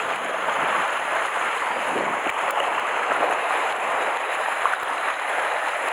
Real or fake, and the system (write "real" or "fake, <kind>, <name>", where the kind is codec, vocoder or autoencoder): fake, vocoder, BigVGAN v2